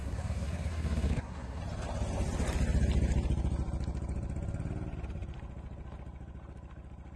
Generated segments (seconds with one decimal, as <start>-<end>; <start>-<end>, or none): 0.0-1.6